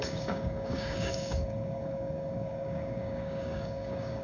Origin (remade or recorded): remade